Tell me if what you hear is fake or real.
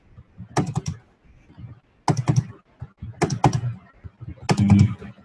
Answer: real